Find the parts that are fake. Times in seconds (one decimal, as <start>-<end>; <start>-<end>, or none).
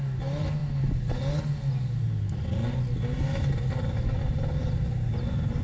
none